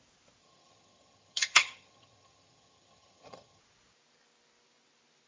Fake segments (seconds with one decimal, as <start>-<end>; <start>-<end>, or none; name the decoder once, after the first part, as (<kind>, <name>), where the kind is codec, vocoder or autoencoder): 0.4-3.6 (vocoder, HiFi-GAN)